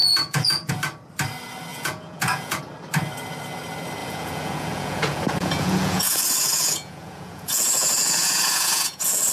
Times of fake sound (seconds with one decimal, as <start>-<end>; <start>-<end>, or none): 0.0-0.7; 1.7-2.6; 4.0-9.3